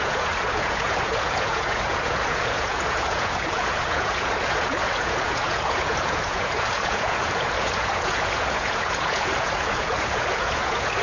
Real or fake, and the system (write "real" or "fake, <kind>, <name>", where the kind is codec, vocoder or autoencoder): fake, vocoder, Vocos